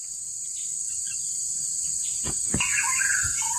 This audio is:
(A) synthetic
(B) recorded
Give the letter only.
B